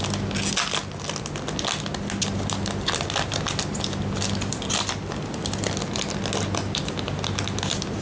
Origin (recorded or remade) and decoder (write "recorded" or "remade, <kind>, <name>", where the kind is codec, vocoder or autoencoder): recorded